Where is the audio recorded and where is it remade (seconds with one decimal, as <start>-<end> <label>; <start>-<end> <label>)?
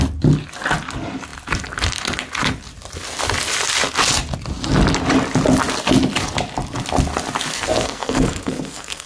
0.0-7.5 recorded; 7.5-9.1 remade